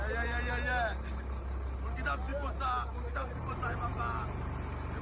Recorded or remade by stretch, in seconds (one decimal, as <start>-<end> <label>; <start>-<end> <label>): 0.0-5.0 recorded